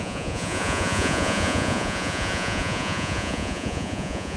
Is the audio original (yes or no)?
no